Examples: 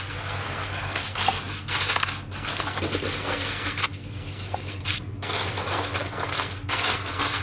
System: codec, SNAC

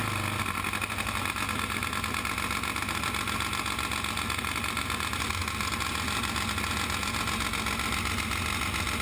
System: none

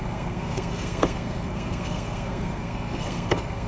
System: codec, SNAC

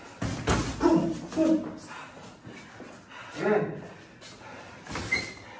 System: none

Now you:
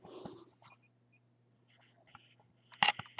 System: none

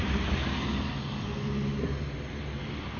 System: none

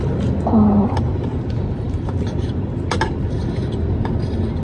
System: none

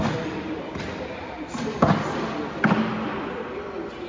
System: none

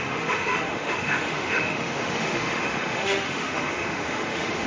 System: autoencoder, DAC-VAE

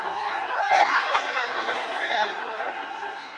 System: codec, SNAC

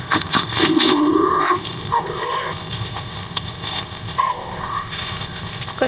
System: codec, ZipCodec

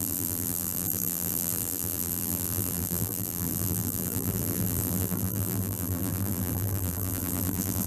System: vocoder, BigVGAN v2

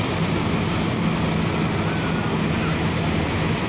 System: none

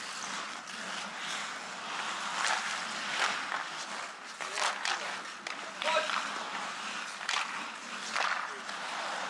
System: none